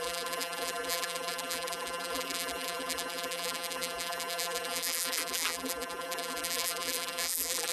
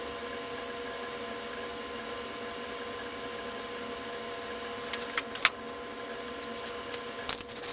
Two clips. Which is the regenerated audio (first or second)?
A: first